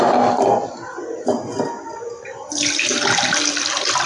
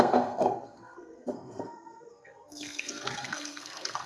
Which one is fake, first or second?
second